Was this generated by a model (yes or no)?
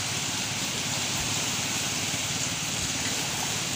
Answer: no